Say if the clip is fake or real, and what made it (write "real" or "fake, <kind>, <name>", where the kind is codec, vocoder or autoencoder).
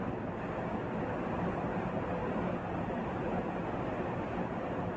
real